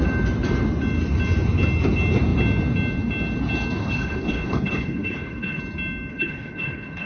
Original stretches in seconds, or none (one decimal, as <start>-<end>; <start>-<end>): 0.0-3.8; 5.6-6.1